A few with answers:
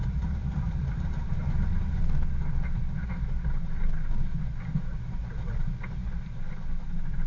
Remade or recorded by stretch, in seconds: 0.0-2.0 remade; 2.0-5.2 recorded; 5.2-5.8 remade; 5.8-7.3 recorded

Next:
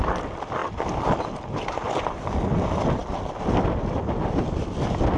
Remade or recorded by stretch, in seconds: 0.0-5.2 recorded